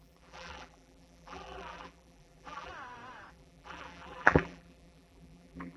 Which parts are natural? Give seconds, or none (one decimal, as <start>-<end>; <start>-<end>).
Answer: 2.7-3.3